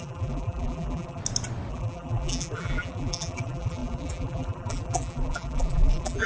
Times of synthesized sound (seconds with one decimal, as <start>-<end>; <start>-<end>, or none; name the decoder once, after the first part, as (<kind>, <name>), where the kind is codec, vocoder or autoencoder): 0.0-1.2 (vocoder, BigVGAN v2); 1.7-6.3